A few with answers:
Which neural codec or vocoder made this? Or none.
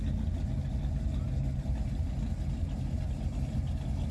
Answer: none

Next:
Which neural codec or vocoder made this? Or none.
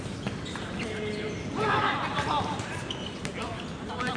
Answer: none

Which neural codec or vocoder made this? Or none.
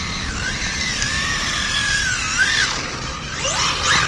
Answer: none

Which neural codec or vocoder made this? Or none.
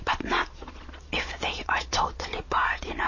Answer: vocoder, Vocos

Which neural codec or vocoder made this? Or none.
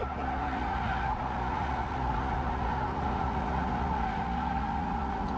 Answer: vocoder, Vocos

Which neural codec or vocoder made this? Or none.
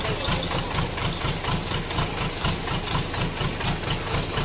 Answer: none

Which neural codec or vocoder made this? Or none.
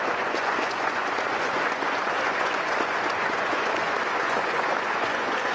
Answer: vocoder, Vocos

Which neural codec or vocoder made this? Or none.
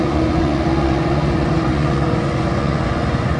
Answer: vocoder, Vocos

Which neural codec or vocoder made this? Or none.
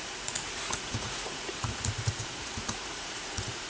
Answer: vocoder, Vocos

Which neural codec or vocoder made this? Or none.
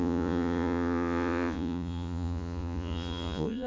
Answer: vocoder, Vocos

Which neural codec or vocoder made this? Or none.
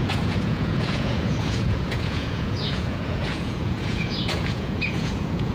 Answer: vocoder, Vocos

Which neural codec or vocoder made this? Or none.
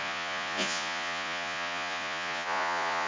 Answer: vocoder, Vocos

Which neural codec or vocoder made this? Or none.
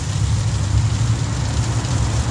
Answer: none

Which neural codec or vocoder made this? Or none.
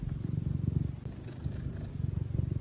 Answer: none